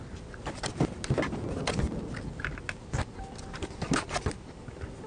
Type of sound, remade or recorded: recorded